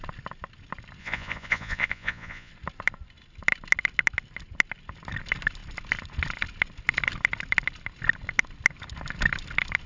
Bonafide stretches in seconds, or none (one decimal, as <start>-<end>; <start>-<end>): 0.0-1.0; 2.5-9.9